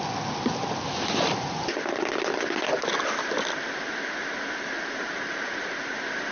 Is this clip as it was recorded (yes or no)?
yes